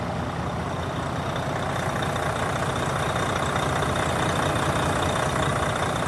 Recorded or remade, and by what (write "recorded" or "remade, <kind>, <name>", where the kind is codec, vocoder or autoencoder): recorded